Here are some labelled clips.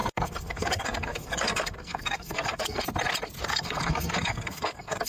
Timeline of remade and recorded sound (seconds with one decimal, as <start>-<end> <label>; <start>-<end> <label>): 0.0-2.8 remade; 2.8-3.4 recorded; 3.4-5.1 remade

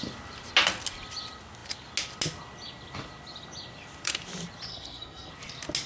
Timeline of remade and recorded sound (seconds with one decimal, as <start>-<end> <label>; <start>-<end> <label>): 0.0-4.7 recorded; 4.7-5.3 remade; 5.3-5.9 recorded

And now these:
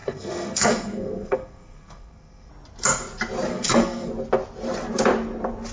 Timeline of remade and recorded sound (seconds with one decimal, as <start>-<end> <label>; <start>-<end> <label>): 0.0-2.5 remade; 2.5-3.5 recorded; 3.5-4.1 remade; 4.1-5.7 recorded

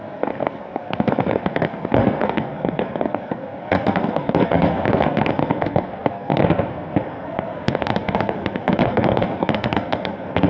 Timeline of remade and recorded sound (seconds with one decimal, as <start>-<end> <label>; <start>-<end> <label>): 0.0-10.5 remade